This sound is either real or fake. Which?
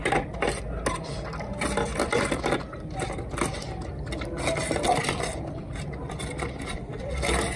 real